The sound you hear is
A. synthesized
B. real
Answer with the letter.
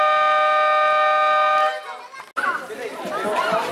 B